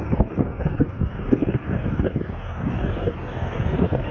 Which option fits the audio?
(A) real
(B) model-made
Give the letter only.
B